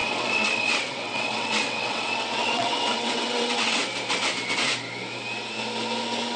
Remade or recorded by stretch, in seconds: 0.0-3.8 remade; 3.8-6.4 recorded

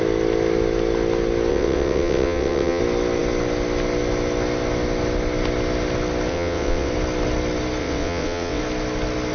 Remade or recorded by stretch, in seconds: 0.0-1.5 recorded; 1.5-2.8 remade; 2.8-6.3 recorded; 6.3-6.9 remade; 6.9-7.8 recorded; 7.8-8.6 remade; 8.6-9.3 recorded

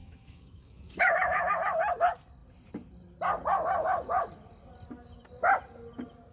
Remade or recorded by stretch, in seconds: 0.0-1.5 remade; 1.5-6.3 recorded

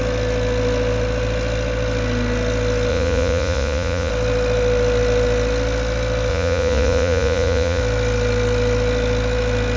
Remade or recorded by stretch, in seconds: 0.0-2.9 recorded; 2.9-4.1 remade; 4.1-6.3 recorded; 6.3-7.8 remade; 7.8-9.8 recorded

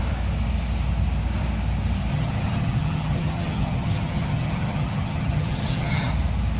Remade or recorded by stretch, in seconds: 0.0-2.1 recorded; 2.1-6.1 remade; 6.1-6.6 recorded

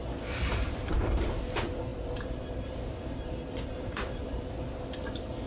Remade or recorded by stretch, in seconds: 0.0-0.5 recorded; 0.5-1.3 remade; 1.3-1.9 recorded; 1.9-4.7 remade; 4.7-5.5 recorded

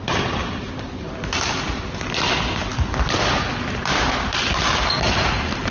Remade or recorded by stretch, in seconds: 0.0-0.4 recorded; 0.4-1.1 remade; 1.1-5.7 recorded

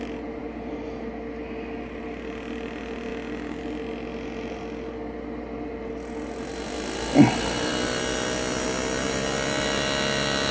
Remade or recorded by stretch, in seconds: 0.0-10.5 recorded